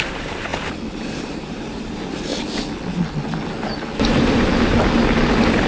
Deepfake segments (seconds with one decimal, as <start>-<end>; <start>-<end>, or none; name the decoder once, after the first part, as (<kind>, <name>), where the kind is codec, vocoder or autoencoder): 0.0-0.5 (vocoder, BigVGAN v2); 1.2-2.3

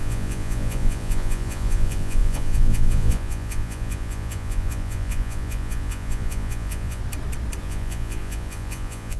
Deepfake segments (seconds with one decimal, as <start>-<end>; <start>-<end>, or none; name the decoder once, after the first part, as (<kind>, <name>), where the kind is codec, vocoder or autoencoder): 0.0-7.0 (vocoder, Vocos); 7.6-9.2

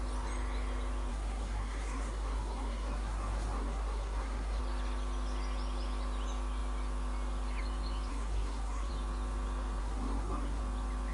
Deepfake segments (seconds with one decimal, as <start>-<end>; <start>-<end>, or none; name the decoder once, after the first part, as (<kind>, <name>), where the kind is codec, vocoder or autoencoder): 1.1-4.6 (codec, SNAC); 8.1-8.9; 9.8-10.6

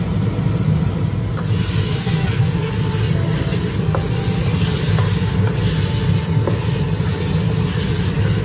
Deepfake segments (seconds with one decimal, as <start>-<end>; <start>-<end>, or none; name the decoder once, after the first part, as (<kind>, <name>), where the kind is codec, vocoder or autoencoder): 1.8-2.7 (codec, SNAC)

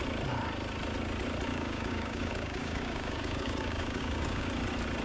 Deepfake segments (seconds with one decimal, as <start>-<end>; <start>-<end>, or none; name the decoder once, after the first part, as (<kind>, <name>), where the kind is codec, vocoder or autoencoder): 1.5-4.5 (codec, DAC)